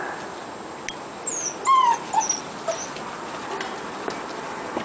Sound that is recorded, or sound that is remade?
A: recorded